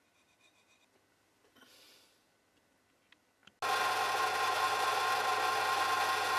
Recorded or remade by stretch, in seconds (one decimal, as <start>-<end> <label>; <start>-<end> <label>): 0.0-6.4 recorded